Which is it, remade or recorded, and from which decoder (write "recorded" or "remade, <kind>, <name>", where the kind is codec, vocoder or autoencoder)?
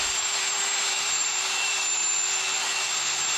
remade, vocoder, BigVGAN v2